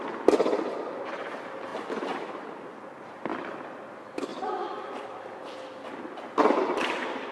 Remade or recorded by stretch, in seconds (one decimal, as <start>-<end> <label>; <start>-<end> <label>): 0.0-7.3 recorded